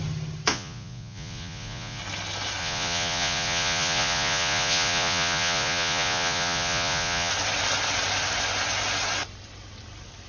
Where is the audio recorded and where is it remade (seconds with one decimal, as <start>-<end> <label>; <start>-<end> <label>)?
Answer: 0.0-0.5 recorded; 0.5-2.0 remade; 2.0-2.6 recorded; 2.6-7.3 remade; 7.3-10.3 recorded